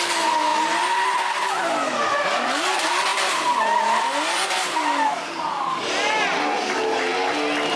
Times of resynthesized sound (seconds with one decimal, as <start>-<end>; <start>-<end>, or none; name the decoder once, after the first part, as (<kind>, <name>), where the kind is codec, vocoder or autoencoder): none